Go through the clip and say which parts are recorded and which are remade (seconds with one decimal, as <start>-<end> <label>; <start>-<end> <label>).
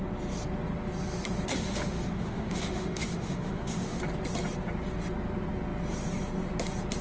0.0-1.5 recorded; 1.5-4.0 remade; 4.0-7.0 recorded